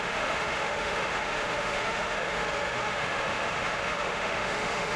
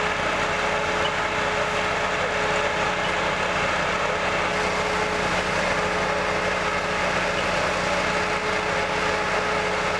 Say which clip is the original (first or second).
second